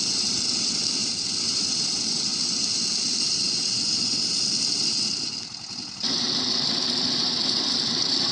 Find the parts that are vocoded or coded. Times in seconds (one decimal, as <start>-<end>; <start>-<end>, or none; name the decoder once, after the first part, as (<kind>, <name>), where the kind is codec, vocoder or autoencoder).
0.0-2.3 (vocoder, BigVGAN v2); 7.3-8.3

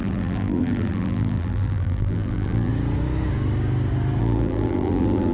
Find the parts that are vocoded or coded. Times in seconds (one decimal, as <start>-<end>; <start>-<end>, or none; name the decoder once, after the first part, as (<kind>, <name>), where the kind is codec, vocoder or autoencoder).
0.0-2.7 (vocoder, BigVGAN v2); 4.2-5.3

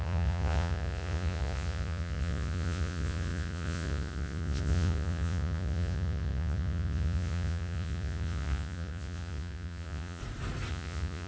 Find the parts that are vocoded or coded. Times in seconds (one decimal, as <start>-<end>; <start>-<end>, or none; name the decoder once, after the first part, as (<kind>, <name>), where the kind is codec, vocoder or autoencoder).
0.0-10.2 (vocoder, Vocos); 10.7-11.3

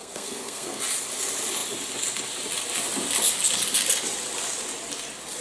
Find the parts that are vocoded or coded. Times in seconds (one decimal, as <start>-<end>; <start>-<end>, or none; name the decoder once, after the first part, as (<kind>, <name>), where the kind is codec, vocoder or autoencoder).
0.0-0.8 (codec, SNAC)

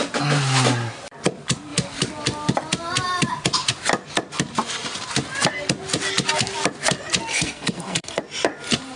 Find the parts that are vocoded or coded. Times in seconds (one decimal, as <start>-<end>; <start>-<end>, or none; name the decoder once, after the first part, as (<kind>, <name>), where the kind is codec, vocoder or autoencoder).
7.3-8.2 (codec, SNAC)

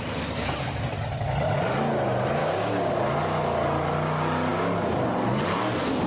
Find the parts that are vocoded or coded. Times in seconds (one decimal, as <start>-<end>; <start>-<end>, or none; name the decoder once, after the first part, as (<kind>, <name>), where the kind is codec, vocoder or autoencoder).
2.4-3.0 (codec, DAC)